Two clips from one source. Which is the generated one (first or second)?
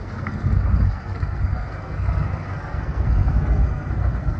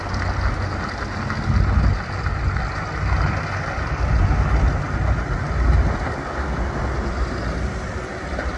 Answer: first